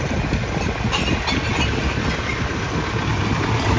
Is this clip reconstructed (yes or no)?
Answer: no